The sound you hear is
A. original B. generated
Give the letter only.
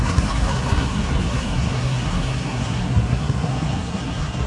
B